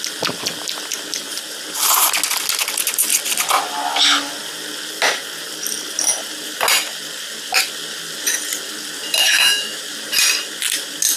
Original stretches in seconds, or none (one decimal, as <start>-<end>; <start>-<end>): 0.0-9.2; 9.8-11.2